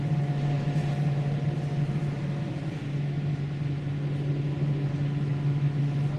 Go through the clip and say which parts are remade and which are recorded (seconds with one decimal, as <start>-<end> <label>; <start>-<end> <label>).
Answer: 0.0-0.8 remade; 0.8-1.9 recorded; 1.9-3.3 remade; 3.3-4.9 recorded; 4.9-6.2 remade

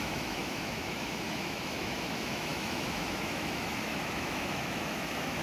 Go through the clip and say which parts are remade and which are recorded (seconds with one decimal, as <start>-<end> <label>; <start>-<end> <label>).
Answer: 0.0-5.4 remade

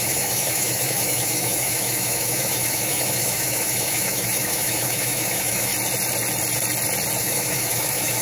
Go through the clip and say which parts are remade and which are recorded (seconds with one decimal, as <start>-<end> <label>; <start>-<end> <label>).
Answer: 0.0-5.7 remade; 5.7-7.2 recorded; 7.2-8.2 remade

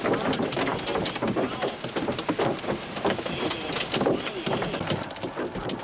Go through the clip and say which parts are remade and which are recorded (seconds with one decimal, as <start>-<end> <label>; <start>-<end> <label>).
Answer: 0.0-5.8 recorded